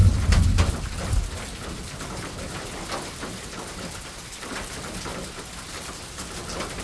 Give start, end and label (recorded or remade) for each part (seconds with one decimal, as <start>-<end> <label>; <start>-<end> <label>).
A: 0.0-6.8 recorded